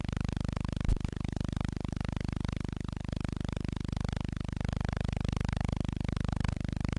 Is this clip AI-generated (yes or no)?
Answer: no